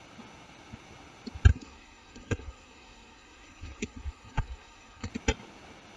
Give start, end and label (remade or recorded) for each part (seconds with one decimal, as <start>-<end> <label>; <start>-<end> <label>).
0.0-1.5 recorded; 1.5-5.1 remade; 5.1-6.0 recorded